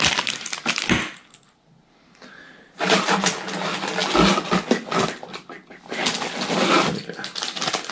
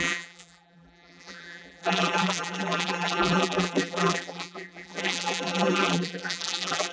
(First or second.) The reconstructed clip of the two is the second